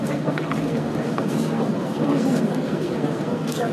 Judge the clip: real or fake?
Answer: fake